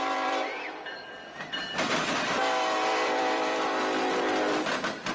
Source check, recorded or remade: remade